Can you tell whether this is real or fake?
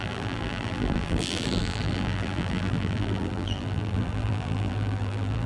fake